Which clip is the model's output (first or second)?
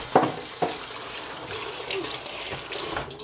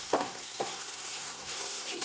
second